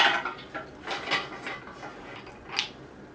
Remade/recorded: recorded